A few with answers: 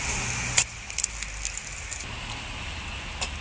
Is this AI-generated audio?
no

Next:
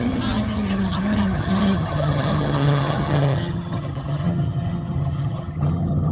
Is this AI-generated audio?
yes